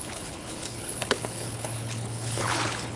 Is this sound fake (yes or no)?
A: yes